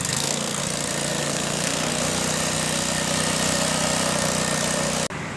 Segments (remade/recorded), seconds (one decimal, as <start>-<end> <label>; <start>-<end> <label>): 0.0-0.6 remade; 0.6-1.2 recorded; 1.2-1.9 remade; 1.9-5.4 recorded